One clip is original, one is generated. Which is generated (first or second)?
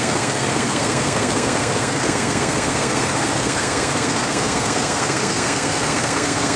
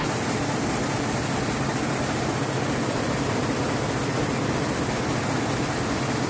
first